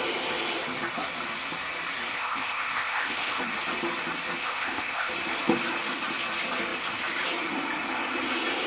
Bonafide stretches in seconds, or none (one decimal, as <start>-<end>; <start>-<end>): 0.0-2.1; 3.4-4.4; 5.1-8.7